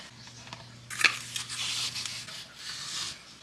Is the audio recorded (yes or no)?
yes